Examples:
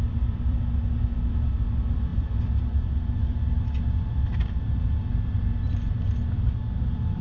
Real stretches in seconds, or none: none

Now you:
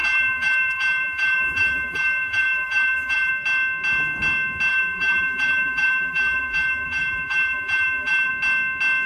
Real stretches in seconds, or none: 3.3-4.7; 8.3-9.1

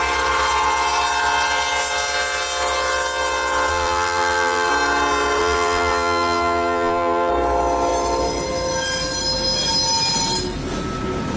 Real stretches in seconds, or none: 0.0-3.7; 4.7-5.4; 7.3-11.4